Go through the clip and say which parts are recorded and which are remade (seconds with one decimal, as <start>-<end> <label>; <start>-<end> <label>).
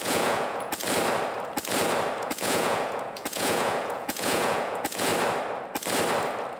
0.0-0.8 remade; 0.8-2.2 recorded; 2.2-5.1 remade; 5.1-6.6 recorded